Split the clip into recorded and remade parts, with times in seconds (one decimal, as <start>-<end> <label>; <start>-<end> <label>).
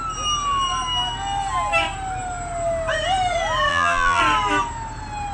0.0-3.7 recorded; 3.7-4.2 remade; 4.2-5.3 recorded